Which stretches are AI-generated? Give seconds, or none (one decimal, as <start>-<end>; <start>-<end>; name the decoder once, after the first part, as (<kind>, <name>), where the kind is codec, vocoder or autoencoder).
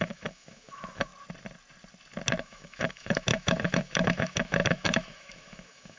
0.0-1.1 (autoencoder, DAC-VAE); 2.4-6.0